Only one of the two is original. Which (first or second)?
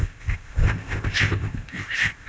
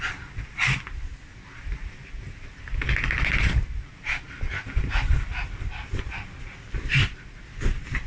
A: second